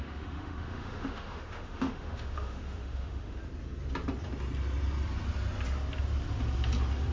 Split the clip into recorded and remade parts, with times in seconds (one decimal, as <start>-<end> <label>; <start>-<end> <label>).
0.0-3.4 remade; 3.4-7.1 recorded